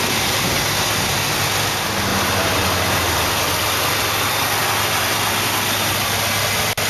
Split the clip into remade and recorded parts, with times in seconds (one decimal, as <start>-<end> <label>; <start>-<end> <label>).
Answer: 0.0-2.1 recorded; 2.1-3.3 remade; 3.3-6.9 recorded